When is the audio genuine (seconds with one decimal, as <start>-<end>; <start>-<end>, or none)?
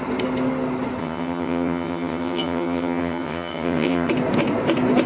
0.0-1.0; 4.1-5.1